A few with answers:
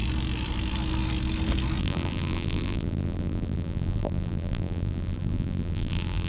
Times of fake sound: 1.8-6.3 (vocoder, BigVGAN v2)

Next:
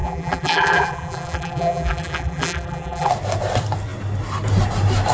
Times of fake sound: 0.0-3.1 (vocoder, BigVGAN v2)

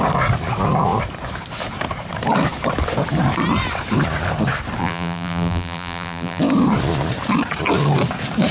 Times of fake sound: 4.8-6.4 (vocoder, BigVGAN v2)

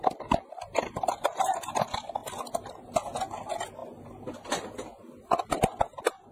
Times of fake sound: none

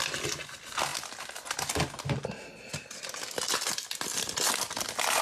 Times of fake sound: none

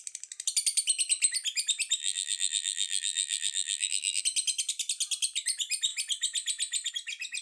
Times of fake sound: 2.0-4.2 (vocoder, BigVGAN v2)

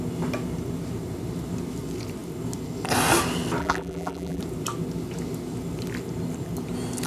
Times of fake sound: 3.6-4.4 (vocoder, BigVGAN v2)